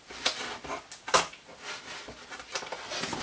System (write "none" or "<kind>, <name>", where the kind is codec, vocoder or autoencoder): none